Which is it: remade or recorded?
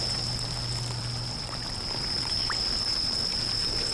recorded